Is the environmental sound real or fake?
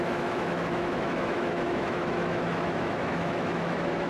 fake